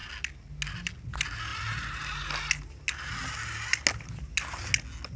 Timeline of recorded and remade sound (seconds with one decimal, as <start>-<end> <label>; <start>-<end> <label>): 0.0-5.2 recorded